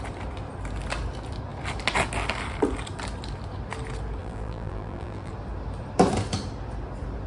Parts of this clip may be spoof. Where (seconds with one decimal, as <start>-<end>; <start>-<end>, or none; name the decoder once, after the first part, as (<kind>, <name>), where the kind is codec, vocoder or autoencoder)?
4.2-5.3 (vocoder, BigVGAN v2)